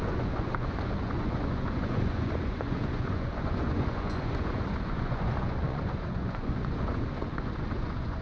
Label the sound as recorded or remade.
remade